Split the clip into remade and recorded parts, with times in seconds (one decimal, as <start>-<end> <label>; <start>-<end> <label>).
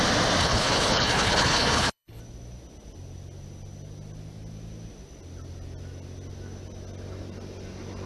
0.0-0.4 recorded; 0.4-2.2 remade; 2.2-8.1 recorded